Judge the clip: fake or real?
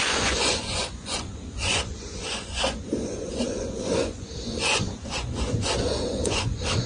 fake